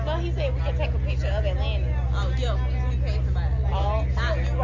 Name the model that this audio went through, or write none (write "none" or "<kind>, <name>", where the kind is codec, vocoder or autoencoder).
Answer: none